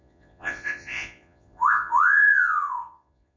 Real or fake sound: fake